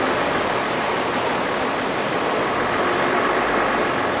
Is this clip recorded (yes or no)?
yes